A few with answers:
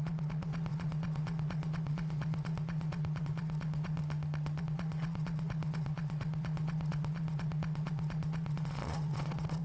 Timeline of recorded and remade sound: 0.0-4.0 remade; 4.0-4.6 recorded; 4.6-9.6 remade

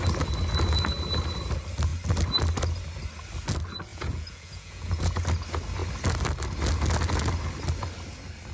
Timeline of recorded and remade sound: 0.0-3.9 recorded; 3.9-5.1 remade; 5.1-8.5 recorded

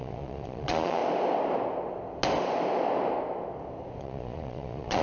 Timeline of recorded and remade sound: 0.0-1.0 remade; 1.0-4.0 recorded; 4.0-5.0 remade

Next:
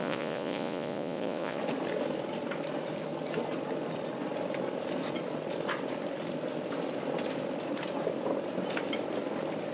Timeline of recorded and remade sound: 0.0-1.6 remade; 1.6-9.7 recorded

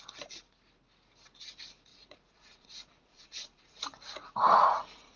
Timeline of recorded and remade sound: 0.0-1.9 recorded; 1.9-5.2 remade

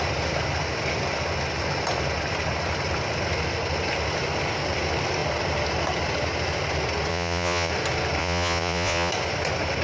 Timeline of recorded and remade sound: 0.0-7.1 recorded; 7.1-7.7 remade; 7.7-8.2 recorded; 8.2-9.1 remade; 9.1-9.8 recorded

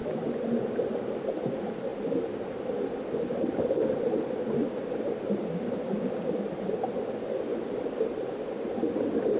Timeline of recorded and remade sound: 0.0-9.4 recorded